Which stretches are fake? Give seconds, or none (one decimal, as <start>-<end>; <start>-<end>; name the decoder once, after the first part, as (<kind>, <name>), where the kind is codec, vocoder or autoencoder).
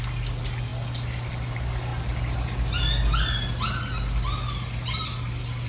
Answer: none